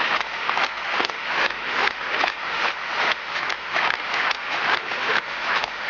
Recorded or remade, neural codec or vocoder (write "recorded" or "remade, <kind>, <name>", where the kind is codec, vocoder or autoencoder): remade, autoencoder, DAC-VAE